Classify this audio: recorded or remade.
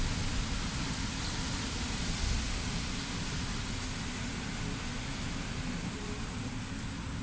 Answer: recorded